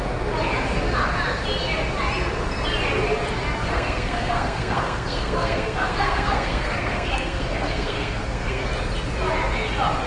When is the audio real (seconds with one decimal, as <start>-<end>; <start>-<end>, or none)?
0.0-3.7; 8.7-10.1